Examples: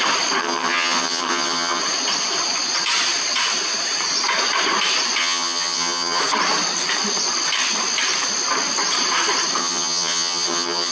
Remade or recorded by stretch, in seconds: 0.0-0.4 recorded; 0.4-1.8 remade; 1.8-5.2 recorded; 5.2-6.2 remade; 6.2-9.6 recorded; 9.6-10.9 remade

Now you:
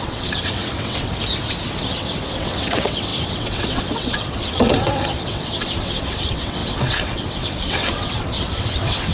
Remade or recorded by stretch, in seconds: 0.0-1.1 remade; 1.1-1.8 recorded; 1.8-9.1 remade

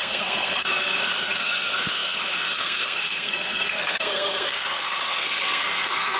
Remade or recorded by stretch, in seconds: 0.0-6.2 remade

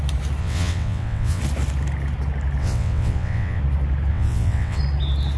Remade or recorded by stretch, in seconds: 0.0-0.4 recorded; 0.4-1.4 remade; 1.4-2.6 recorded; 2.6-3.6 remade; 3.6-4.1 recorded; 4.1-4.8 remade; 4.8-5.4 recorded

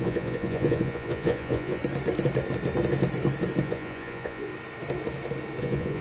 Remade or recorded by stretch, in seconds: 0.0-1.8 remade; 1.8-3.6 recorded; 3.6-4.5 remade; 4.5-5.6 recorded; 5.6-6.0 remade

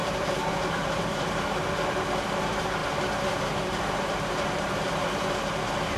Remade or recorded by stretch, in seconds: 0.0-1.6 remade; 1.6-2.4 recorded; 2.4-6.0 remade

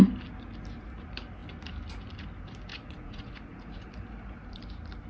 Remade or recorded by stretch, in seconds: 0.0-2.7 recorded; 2.7-3.8 remade; 3.8-5.1 recorded

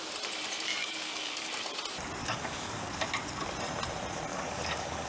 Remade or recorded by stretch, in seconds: 0.0-0.7 recorded; 0.7-1.5 remade; 1.5-2.2 recorded; 2.2-2.9 remade; 2.9-4.3 recorded; 4.3-5.1 remade